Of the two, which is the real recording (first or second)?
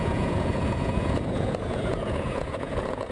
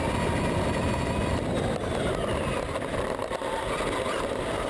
second